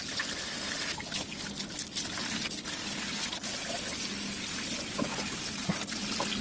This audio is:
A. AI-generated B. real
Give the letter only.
B